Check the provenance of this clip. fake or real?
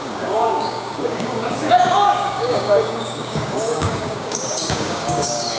fake